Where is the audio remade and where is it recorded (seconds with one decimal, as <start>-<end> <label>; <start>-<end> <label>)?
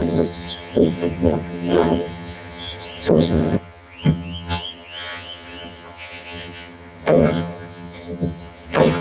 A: 0.0-9.0 remade